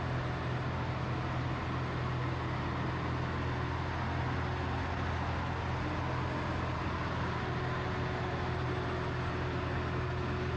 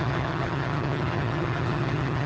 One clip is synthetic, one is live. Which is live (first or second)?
first